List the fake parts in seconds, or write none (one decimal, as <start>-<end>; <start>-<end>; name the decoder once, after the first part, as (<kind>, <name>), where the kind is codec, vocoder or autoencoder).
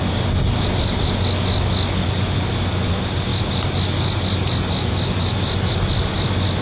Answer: none